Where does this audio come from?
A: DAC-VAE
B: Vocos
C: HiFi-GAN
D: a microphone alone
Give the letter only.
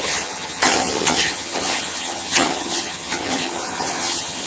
C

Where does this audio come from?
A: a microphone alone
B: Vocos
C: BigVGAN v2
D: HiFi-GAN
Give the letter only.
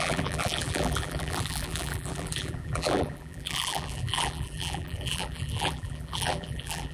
C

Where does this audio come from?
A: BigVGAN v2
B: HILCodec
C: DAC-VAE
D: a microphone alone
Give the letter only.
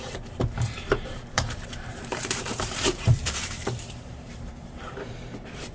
A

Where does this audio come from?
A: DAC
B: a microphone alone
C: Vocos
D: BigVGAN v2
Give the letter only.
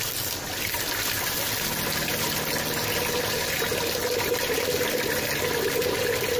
B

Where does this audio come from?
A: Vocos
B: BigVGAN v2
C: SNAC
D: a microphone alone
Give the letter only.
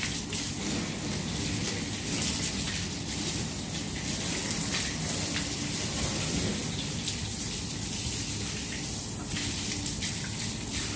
D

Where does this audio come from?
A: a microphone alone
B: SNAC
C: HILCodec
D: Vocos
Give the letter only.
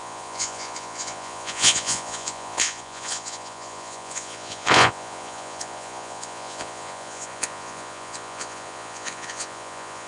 D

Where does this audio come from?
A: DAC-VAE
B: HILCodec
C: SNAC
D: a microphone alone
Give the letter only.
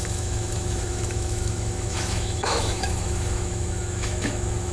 A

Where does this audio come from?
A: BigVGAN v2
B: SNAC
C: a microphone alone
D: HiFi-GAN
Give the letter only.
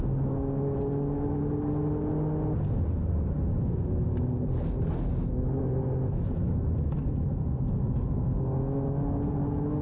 C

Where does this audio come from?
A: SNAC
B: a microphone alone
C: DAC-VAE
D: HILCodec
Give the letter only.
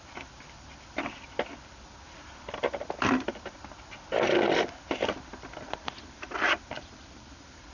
B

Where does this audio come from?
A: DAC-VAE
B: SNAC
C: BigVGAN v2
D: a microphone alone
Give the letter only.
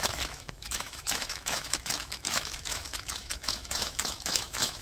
A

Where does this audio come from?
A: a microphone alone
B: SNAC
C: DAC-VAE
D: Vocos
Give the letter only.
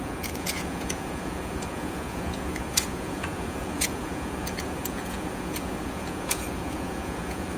D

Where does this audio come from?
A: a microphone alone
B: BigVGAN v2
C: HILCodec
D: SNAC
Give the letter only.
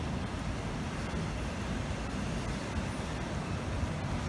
A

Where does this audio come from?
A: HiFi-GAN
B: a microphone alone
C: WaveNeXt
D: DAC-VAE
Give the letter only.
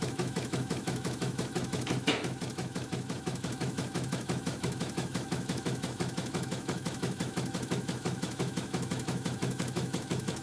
D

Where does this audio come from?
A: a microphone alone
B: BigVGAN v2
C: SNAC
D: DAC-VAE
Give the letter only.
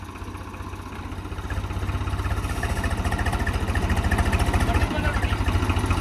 A